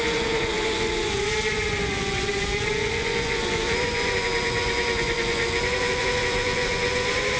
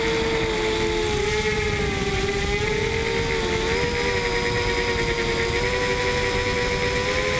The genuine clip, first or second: second